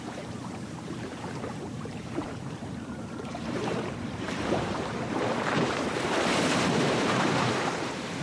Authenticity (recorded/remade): remade